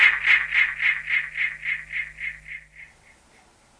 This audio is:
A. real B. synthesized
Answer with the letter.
A